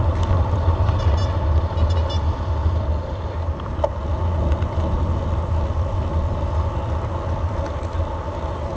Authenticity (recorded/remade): recorded